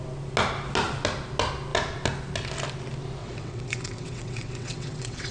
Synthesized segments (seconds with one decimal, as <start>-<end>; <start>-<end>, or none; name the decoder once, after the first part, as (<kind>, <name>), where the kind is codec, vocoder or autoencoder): 3.2-5.3 (vocoder, WaveNeXt)